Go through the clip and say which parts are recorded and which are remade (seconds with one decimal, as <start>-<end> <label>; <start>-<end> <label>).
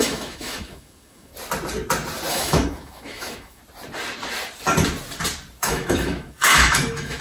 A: 0.0-1.3 remade; 1.3-2.3 recorded; 2.3-3.6 remade; 3.6-5.6 recorded; 5.6-7.2 remade